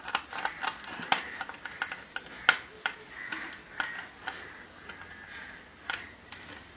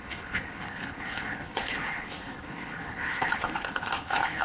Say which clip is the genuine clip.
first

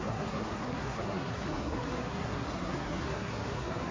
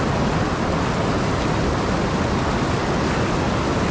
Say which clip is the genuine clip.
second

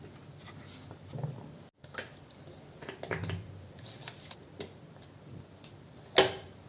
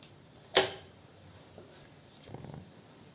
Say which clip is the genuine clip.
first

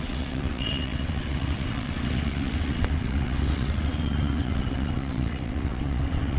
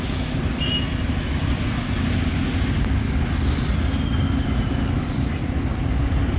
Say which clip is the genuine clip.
second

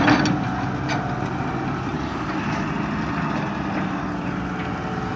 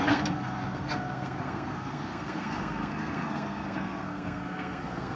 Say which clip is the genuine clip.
first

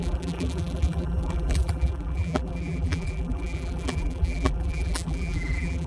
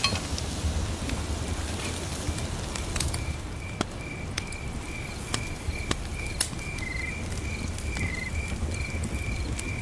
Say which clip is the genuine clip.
second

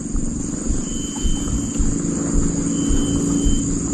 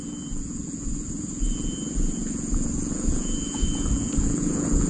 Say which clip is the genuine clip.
first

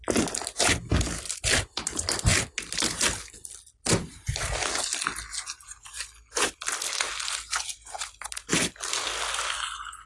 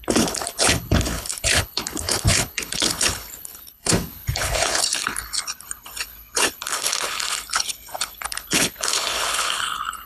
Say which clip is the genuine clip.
first